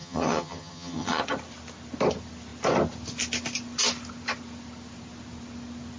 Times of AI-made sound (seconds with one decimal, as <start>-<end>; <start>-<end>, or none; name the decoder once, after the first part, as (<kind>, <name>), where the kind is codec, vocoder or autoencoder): 0.0-1.2 (vocoder, HiFi-GAN)